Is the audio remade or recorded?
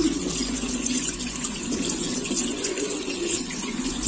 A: remade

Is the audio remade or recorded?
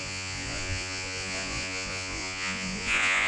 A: remade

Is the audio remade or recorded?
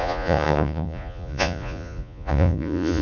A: remade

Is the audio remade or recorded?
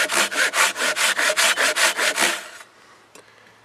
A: recorded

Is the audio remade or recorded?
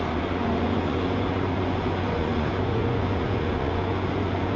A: remade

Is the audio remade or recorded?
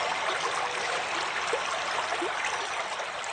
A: recorded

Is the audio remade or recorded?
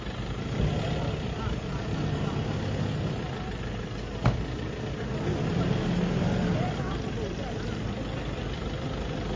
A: recorded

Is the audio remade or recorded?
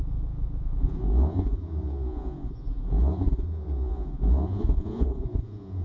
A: remade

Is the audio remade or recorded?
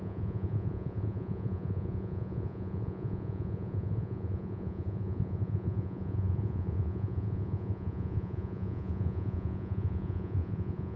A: remade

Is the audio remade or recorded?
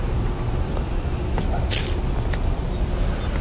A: recorded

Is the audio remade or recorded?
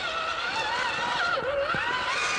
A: recorded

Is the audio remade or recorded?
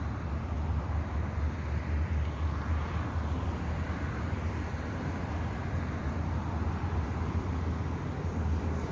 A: recorded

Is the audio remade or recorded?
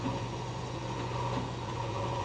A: remade